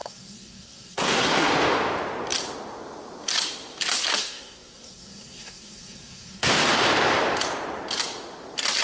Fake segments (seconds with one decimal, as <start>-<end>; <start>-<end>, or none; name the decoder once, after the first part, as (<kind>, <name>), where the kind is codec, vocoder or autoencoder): 0.0-1.5 (codec, SNAC); 4.2-6.5